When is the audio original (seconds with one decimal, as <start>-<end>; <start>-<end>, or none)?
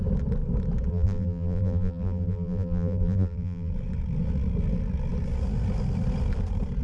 0.0-0.9; 3.7-6.8